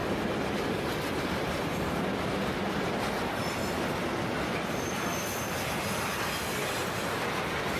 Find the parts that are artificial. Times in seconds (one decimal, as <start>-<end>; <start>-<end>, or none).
0.0-2.4; 3.4-6.6